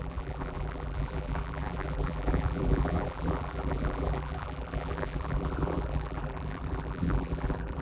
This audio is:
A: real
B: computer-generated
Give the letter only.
B